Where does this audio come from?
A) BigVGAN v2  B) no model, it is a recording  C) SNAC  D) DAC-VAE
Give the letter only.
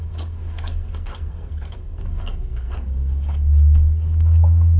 C